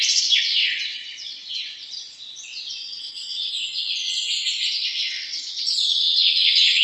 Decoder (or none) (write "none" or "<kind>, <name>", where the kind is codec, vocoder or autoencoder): vocoder, WaveNeXt